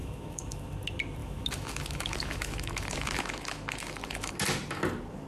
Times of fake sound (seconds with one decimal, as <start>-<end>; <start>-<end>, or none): 0.0-0.7; 1.2-4.4